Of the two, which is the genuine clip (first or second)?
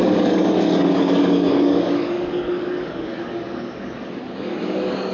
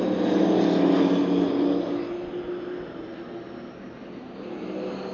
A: second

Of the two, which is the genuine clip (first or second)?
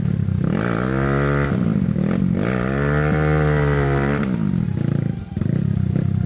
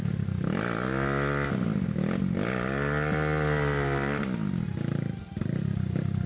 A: second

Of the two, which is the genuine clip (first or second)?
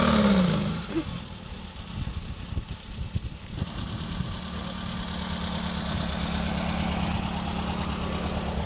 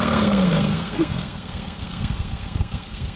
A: first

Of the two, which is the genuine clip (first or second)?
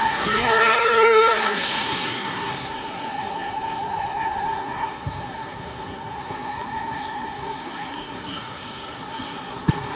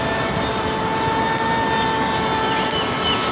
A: second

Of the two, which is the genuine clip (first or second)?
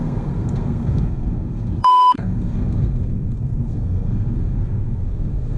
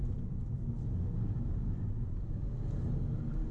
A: second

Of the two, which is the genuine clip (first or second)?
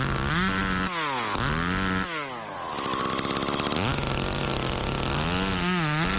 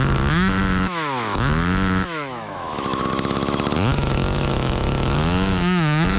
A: first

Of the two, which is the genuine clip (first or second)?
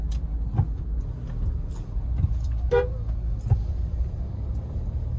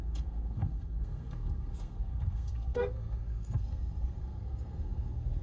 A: first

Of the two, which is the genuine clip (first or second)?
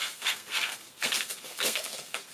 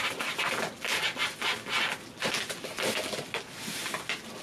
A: second